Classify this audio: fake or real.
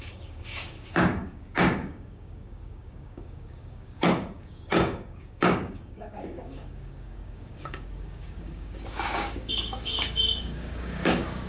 fake